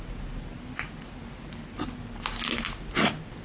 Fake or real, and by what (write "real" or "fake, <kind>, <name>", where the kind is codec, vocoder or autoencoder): real